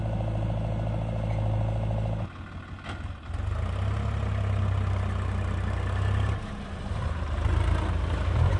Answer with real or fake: real